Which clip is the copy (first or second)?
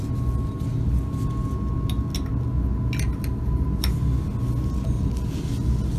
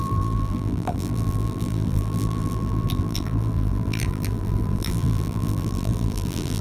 second